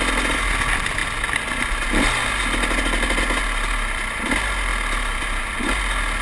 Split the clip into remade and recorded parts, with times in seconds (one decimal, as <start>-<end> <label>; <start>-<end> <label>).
0.0-6.2 recorded